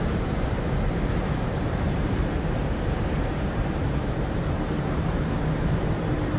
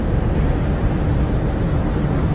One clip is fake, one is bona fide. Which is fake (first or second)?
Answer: first